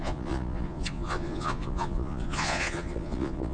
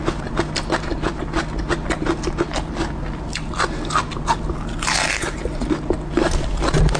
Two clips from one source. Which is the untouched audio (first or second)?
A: second